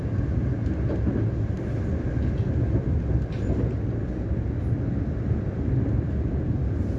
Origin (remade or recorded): recorded